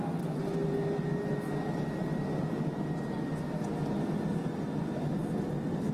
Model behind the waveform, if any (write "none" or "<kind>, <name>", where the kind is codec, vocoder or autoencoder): none